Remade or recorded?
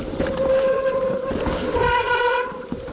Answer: remade